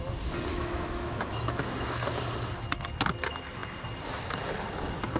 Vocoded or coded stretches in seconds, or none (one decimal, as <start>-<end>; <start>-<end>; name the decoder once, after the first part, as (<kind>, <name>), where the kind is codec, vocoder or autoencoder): 0.5-1.7 (autoencoder, DAC-VAE)